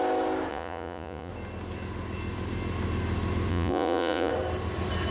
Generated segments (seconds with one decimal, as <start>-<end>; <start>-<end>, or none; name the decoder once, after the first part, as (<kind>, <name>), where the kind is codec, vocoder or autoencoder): 0.5-1.3 (vocoder, Vocos); 3.5-4.3